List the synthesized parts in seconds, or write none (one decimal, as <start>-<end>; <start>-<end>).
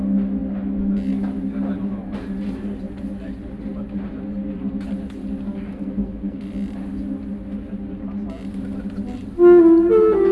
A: 5.7-6.4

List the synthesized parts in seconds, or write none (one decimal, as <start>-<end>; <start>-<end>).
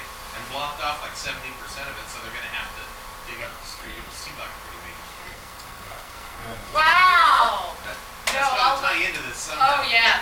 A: 3.4-4.2; 5.1-7.5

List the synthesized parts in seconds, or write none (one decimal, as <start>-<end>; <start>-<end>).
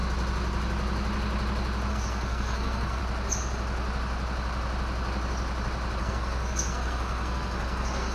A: 1.9-3.0; 6.0-8.1